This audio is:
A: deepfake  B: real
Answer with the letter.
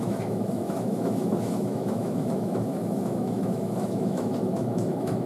A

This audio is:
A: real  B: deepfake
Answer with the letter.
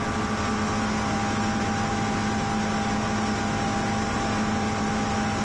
A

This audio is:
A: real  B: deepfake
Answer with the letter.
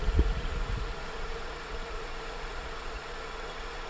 B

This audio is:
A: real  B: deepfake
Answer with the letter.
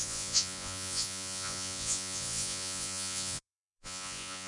B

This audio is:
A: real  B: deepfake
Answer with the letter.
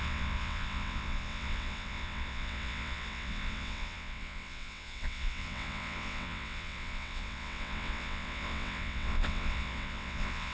B